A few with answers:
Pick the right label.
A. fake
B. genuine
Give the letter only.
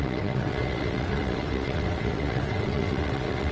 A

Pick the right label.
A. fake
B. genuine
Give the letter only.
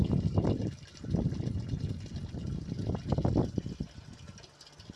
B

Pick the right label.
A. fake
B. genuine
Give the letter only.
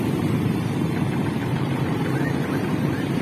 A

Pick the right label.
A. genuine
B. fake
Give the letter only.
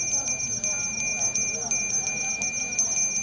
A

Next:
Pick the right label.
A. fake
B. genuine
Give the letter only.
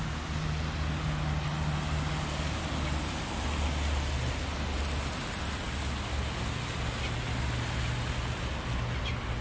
B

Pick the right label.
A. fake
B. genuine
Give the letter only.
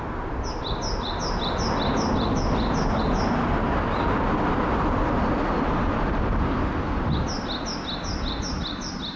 B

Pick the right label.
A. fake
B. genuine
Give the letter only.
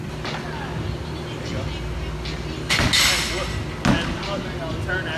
B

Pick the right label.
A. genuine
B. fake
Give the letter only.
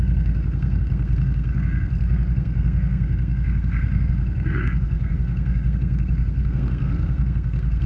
B